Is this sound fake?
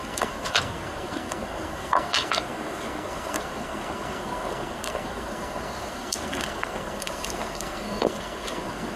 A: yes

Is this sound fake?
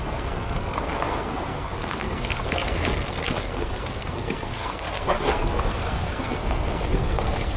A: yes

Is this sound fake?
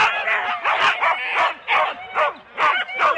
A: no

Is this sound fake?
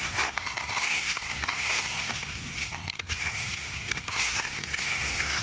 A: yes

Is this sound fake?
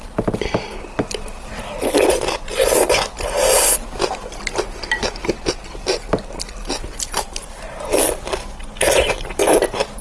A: no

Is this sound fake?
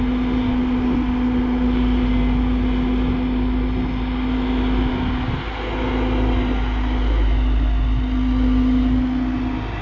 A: no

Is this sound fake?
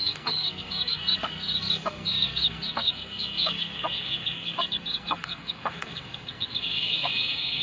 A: yes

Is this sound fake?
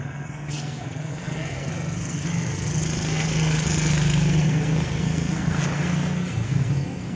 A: yes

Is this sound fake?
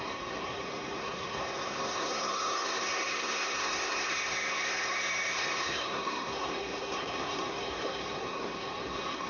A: yes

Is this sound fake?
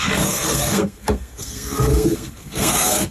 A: yes